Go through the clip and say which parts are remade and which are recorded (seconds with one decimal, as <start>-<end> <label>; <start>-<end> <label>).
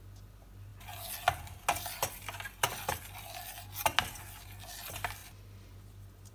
0.0-6.3 recorded